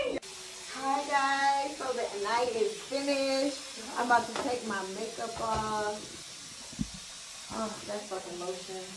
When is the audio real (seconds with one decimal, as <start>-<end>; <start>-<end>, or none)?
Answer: 0.0-9.0